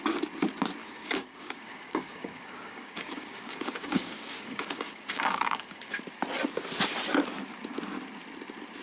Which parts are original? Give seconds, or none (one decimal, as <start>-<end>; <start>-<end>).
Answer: 0.0-0.8; 6.0-8.8